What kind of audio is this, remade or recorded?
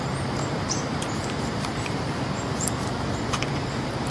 remade